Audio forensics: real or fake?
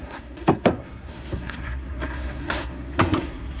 fake